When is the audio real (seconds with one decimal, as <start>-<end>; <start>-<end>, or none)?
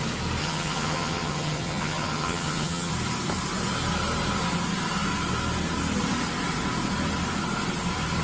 0.0-0.4; 2.9-8.2